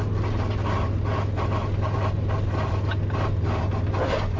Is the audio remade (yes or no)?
no